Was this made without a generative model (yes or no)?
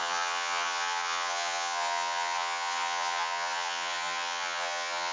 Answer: no